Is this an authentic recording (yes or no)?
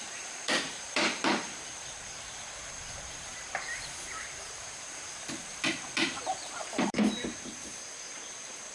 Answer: no